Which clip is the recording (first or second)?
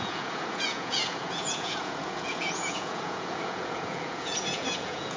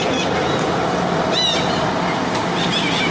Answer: second